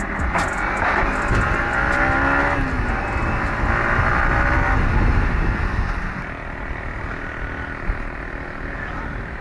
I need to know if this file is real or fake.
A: real